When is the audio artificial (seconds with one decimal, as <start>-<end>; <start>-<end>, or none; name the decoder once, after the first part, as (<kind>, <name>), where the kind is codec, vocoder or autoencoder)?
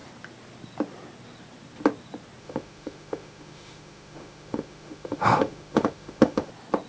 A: 2.4-6.5 (autoencoder, DAC-VAE)